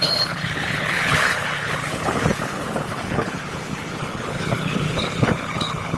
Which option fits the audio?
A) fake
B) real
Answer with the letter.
A